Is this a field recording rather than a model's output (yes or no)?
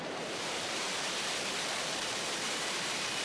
no